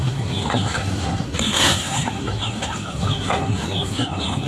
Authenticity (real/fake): fake